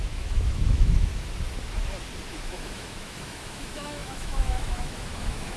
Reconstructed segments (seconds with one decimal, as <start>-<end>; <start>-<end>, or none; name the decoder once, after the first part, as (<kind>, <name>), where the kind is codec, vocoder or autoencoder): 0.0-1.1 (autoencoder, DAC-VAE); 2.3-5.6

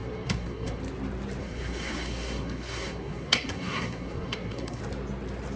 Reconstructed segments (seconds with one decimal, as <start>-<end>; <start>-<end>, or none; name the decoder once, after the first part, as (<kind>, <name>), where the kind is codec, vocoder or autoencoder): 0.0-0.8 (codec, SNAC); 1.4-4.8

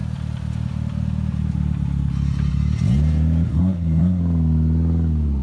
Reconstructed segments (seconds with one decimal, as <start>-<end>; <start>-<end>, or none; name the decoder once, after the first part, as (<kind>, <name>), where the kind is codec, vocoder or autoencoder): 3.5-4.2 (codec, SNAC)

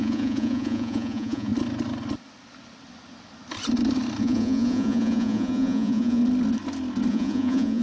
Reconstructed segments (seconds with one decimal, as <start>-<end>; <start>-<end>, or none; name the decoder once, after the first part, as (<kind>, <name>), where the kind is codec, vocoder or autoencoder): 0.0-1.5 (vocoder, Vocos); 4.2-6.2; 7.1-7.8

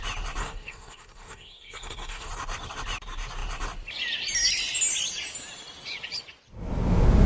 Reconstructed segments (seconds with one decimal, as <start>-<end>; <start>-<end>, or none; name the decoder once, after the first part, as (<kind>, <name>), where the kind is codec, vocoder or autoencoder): 0.4-2.3 (codec, SNAC)

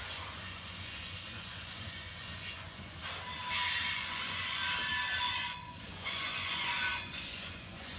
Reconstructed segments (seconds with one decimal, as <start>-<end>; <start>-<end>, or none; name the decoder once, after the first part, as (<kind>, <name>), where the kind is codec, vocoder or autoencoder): 0.0-3.0 (vocoder, Vocos); 3.9-4.6; 5.2-8.0

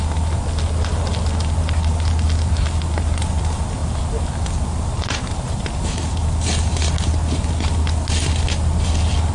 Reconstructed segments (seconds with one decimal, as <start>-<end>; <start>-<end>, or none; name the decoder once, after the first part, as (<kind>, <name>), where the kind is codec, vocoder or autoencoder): none